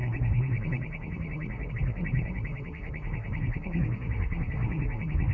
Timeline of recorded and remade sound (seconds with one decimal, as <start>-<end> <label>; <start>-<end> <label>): 0.0-5.3 remade